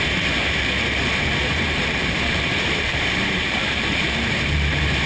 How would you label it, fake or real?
fake